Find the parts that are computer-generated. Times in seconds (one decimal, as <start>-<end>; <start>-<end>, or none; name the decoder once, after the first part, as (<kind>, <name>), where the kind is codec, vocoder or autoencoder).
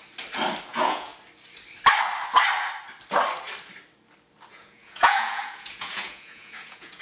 0.7-1.1 (vocoder, Vocos); 4.5-7.0